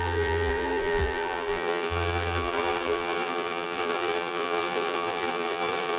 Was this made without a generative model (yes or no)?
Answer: no